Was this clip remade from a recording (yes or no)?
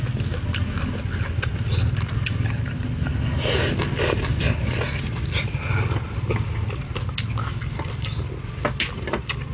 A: no